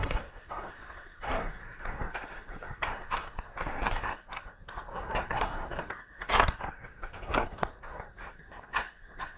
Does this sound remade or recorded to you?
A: remade